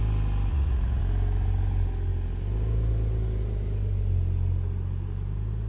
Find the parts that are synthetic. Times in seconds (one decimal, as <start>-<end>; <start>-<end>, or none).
0.5-1.0